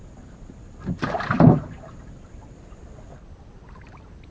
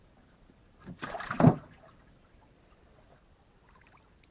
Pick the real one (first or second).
first